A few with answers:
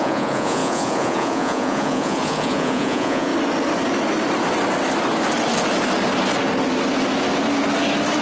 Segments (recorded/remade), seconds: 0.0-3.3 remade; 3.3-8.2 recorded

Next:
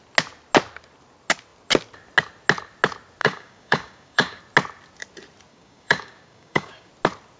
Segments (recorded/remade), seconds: 0.0-3.2 recorded; 3.2-4.4 remade; 4.4-5.5 recorded; 5.5-6.9 remade; 6.9-7.4 recorded

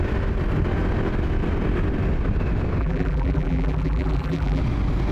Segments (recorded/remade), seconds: 0.0-2.8 recorded; 2.8-4.6 remade; 4.6-5.1 recorded

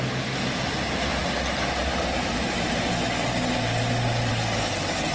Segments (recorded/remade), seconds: 0.0-5.1 recorded